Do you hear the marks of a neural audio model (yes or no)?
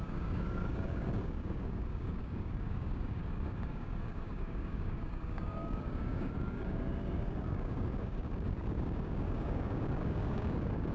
yes